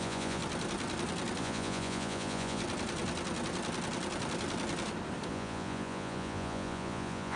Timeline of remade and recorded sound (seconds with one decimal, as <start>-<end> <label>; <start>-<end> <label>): 0.0-0.4 remade; 0.4-1.4 recorded; 1.4-2.6 remade; 2.6-5.3 recorded; 5.3-7.4 remade